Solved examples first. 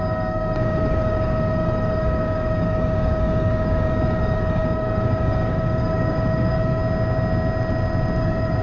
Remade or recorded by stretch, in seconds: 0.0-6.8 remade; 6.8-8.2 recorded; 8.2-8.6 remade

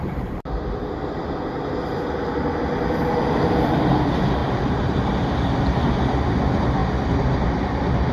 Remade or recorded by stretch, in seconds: 0.0-4.4 recorded; 4.4-5.0 remade; 5.0-8.1 recorded

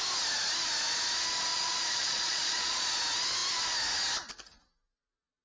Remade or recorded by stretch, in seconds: 0.0-1.5 recorded; 1.5-2.9 remade; 2.9-5.4 recorded

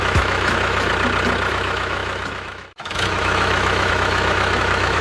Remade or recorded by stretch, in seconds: 0.0-0.9 remade; 0.9-1.5 recorded; 1.5-5.0 remade

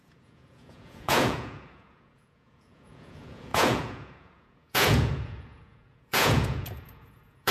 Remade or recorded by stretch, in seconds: 0.0-7.5 remade

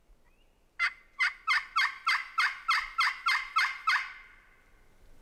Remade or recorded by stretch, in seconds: 0.0-5.2 recorded